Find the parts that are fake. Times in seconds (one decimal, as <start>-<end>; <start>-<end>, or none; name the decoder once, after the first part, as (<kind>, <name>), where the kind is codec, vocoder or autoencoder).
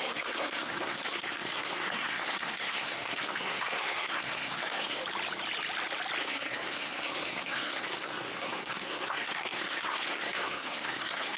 0.0-5.0 (codec, SNAC); 6.2-11.4